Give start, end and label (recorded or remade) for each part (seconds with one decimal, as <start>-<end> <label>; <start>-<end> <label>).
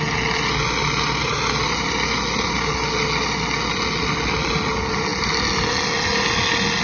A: 0.0-6.8 recorded